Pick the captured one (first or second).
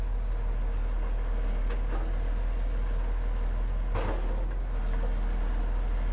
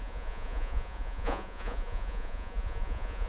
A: first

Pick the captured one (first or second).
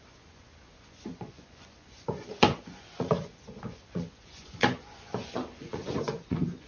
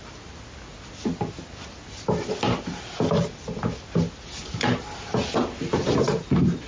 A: second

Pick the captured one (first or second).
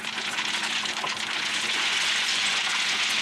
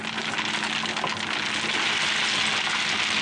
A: second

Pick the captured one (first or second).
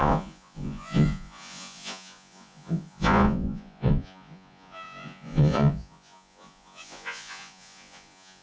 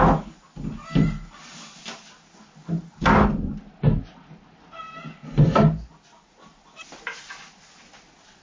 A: second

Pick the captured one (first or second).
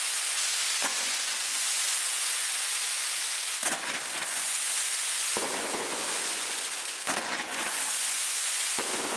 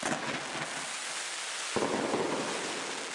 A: second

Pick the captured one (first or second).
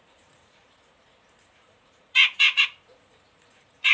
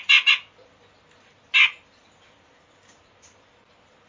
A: second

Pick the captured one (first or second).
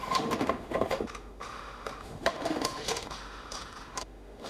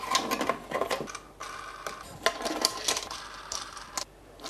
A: second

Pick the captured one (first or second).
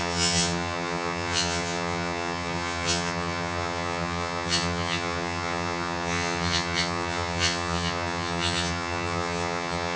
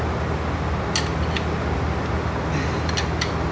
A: second